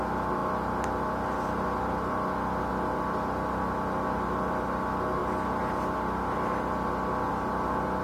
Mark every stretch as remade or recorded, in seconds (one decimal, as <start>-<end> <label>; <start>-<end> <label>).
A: 0.0-8.0 recorded